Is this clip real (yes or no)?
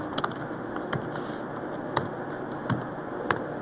yes